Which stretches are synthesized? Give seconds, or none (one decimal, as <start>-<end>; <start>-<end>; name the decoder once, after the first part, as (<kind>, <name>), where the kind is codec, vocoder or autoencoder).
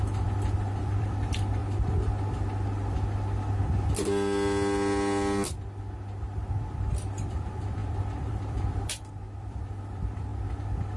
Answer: 0.0-1.6 (vocoder, BigVGAN v2); 6.5-10.3